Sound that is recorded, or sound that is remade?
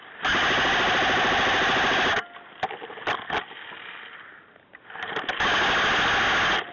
recorded